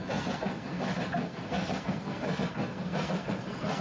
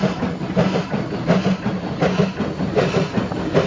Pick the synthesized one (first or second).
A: first